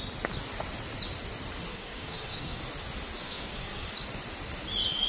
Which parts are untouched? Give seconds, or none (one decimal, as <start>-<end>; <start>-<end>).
0.0-1.7; 2.6-3.2; 3.9-5.1